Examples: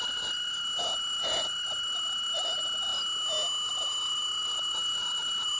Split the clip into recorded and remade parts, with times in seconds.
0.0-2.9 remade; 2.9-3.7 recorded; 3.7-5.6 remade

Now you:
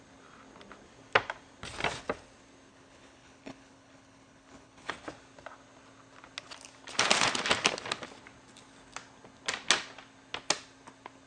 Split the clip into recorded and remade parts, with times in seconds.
0.0-2.7 recorded; 2.7-4.9 remade; 4.9-11.3 recorded

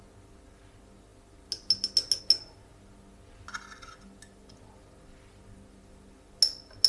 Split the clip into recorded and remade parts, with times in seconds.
0.0-6.9 recorded